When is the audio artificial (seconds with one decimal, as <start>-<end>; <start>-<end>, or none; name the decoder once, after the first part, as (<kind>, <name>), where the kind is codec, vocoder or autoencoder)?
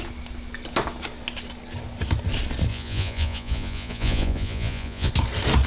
2.7-5.1 (vocoder, Vocos)